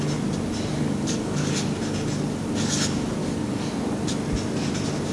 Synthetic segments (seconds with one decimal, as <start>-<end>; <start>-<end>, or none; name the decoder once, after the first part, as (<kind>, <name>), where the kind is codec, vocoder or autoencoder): 0.7-1.5 (codec, DAC); 3.2-3.7